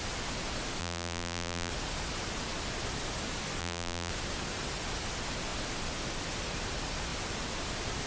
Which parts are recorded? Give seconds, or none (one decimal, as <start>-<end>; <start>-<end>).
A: 0.0-0.8; 1.7-3.6; 4.1-8.1

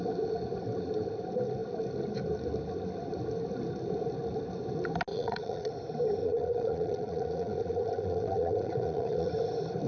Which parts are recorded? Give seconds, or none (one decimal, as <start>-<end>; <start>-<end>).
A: 0.0-5.1; 5.7-6.2; 9.3-9.9

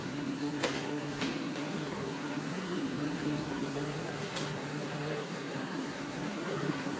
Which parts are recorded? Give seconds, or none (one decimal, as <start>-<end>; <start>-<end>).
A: none

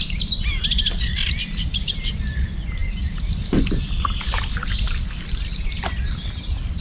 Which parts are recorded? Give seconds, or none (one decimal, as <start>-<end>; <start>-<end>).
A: 0.0-6.8